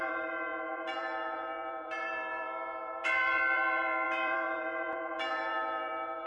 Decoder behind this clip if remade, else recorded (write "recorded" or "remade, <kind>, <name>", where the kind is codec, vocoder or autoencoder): remade, vocoder, BigVGAN v2